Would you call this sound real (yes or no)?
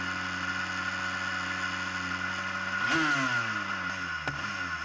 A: yes